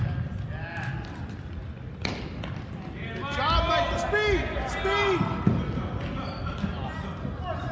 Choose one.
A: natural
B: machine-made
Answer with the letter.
A